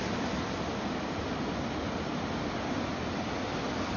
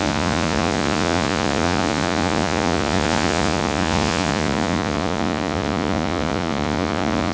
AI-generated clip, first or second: second